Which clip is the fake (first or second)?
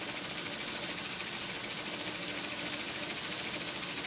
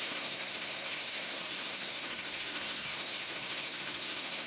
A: second